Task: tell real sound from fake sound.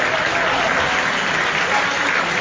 real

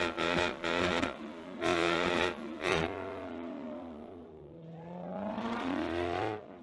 fake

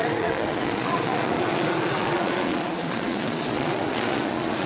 fake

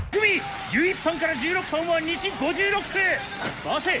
real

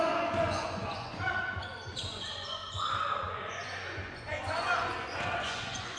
fake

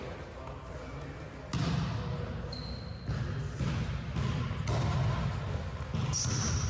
real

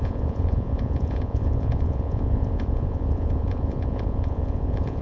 fake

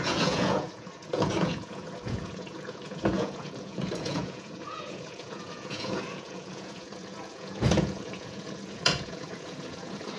fake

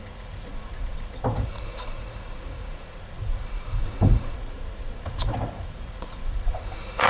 fake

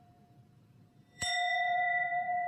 fake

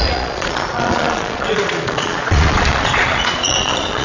fake